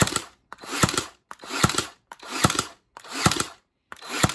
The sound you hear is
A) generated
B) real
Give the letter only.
A